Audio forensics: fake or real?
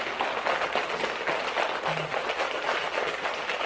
real